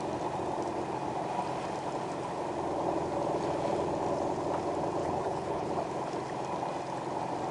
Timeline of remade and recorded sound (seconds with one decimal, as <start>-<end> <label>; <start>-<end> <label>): 0.0-5.0 recorded; 5.0-5.7 remade; 5.7-7.5 recorded